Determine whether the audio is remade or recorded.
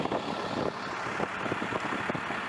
recorded